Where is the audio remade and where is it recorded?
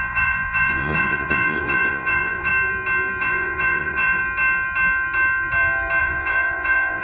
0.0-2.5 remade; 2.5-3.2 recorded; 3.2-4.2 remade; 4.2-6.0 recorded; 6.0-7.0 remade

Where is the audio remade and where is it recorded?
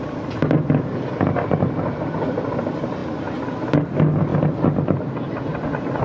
0.0-6.0 recorded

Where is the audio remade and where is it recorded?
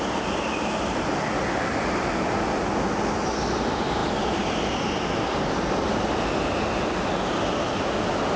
0.0-8.4 recorded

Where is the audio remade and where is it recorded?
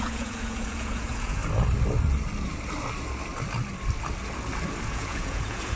0.0-1.4 remade; 1.4-4.9 recorded; 4.9-5.8 remade